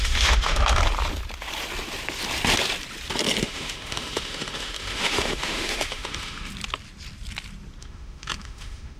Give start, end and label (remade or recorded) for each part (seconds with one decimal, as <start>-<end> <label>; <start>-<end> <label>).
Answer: 0.0-0.8 remade; 0.8-3.4 recorded; 3.4-6.5 remade; 6.5-7.8 recorded; 7.8-9.0 remade